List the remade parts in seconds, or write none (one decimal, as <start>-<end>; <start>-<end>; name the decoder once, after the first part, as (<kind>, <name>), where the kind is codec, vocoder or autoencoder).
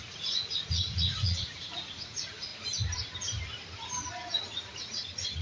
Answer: 0.0-2.5 (vocoder, Vocos); 4.7-5.4